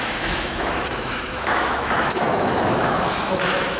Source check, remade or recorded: remade